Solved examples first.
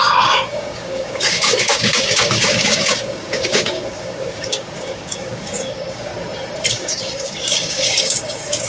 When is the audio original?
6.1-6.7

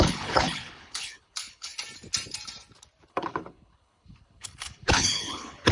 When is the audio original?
1.7-3.1

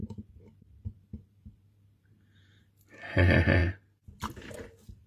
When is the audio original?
2.6-5.1

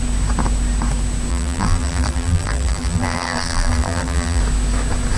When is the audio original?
0.0-1.3; 4.4-5.2